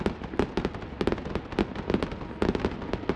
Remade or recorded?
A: recorded